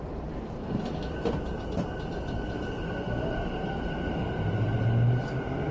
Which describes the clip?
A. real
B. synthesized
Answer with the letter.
A